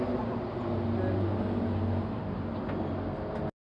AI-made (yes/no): no